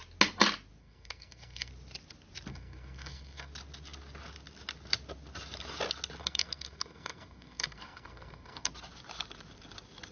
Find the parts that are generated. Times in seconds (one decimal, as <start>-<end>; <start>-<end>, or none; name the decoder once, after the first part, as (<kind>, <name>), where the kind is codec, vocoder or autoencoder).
0.8-1.7 (codec, SNAC); 2.5-3.5; 6.2-8.7